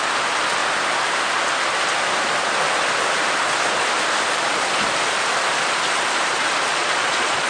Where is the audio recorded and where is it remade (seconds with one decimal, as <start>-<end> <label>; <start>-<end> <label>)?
0.0-6.7 recorded; 6.7-7.5 remade